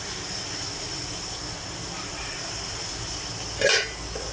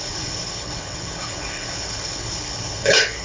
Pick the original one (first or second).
first